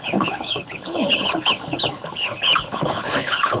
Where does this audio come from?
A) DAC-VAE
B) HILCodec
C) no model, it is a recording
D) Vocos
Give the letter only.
B